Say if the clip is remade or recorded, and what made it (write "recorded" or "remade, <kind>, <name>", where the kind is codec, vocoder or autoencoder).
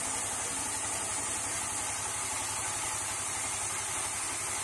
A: recorded